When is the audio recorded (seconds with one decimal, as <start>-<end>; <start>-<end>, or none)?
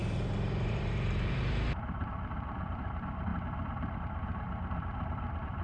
3.3-4.0